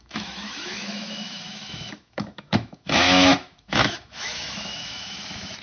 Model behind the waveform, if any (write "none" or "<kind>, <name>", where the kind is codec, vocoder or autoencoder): autoencoder, DAC-VAE